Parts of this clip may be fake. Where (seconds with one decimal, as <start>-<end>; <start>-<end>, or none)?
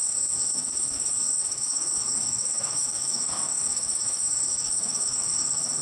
0.0-5.8